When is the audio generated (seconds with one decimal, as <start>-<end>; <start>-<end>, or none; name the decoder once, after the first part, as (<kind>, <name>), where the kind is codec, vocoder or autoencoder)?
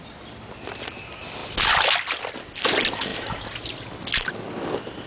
none